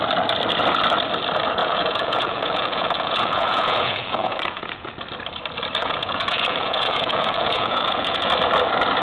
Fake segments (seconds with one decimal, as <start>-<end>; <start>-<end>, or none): 1.6-4.9; 5.8-8.3